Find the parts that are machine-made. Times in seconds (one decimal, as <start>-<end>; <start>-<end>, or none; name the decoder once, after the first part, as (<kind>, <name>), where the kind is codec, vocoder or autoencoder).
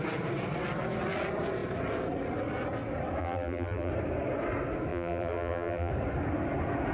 3.2-3.9 (vocoder, BigVGAN v2); 4.9-5.9